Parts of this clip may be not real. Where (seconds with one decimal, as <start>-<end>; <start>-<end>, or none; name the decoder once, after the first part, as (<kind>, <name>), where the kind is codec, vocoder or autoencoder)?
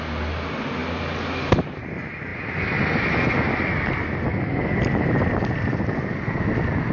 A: none